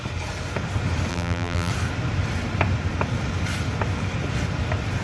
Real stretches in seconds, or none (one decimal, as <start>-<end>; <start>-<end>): 0.0-1.1; 1.7-5.0